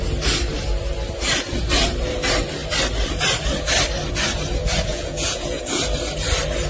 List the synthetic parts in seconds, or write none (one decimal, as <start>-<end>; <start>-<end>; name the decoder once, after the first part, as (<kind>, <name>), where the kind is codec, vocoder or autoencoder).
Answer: 4.9-5.6 (vocoder, Vocos)